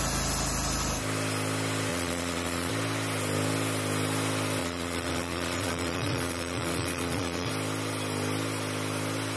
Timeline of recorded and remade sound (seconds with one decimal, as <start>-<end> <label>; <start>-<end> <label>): 0.0-1.9 recorded; 1.9-2.7 remade; 2.7-4.6 recorded; 4.6-7.5 remade; 7.5-9.4 recorded